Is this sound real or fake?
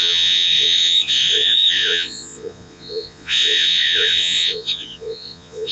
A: fake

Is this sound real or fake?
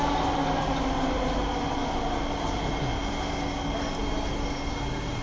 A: real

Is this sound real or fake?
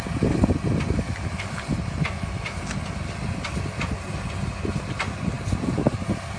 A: real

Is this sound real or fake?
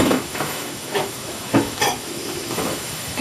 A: fake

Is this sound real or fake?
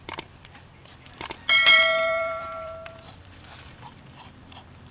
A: fake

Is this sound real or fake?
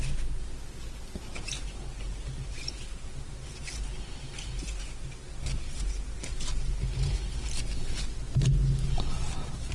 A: real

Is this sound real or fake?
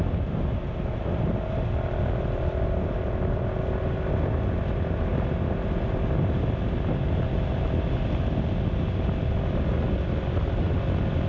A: real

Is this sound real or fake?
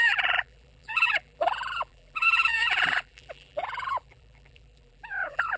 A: fake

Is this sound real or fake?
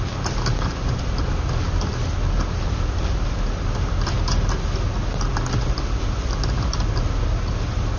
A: real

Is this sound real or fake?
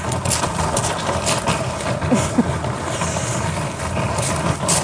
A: real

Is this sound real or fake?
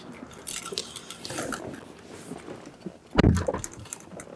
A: real